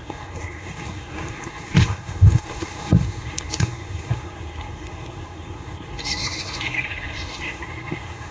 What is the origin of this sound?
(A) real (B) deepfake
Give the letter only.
B